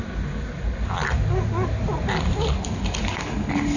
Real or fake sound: real